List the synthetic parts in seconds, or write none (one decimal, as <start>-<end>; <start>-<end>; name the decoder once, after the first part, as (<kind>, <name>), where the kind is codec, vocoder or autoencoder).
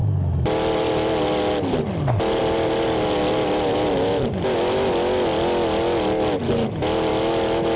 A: none